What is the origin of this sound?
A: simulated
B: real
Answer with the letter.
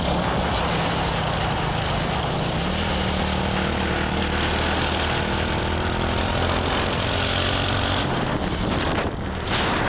B